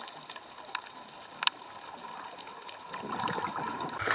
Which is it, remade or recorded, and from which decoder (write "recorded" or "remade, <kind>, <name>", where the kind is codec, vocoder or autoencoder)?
remade, vocoder, BigVGAN v2